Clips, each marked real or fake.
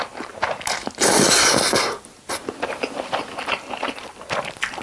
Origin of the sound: real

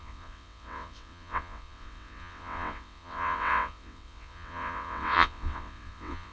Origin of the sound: fake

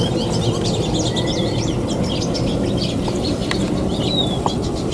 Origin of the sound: real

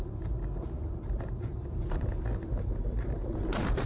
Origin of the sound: fake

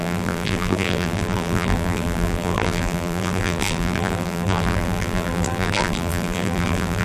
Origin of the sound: fake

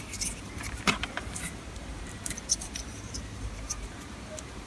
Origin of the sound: fake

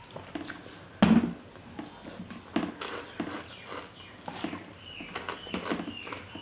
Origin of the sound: real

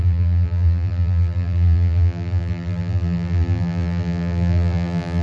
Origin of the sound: fake